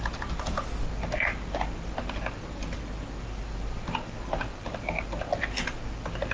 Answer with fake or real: real